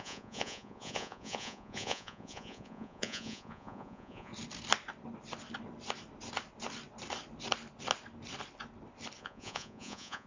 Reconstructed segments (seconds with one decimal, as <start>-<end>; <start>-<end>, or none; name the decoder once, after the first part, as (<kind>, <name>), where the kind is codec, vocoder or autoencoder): 0.0-4.3 (vocoder, Vocos); 9.2-10.3